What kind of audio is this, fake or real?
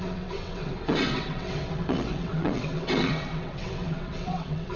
fake